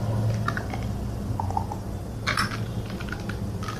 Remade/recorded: recorded